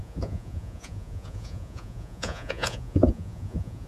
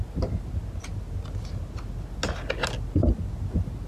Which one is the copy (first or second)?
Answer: first